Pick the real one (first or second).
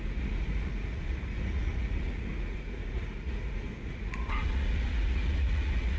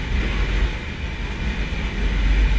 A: second